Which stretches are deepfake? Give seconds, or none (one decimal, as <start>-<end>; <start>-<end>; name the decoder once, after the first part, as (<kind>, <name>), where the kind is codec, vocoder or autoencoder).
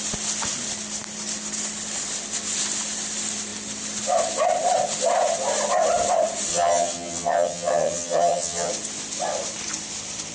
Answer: 6.5-8.7 (vocoder, HiFi-GAN)